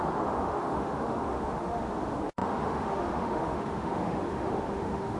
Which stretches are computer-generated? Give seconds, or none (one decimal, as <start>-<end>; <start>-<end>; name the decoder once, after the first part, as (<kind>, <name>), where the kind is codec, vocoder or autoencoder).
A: 0.0-5.2 (autoencoder, DAC-VAE)